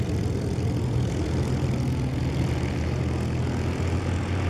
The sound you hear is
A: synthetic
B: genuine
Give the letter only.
B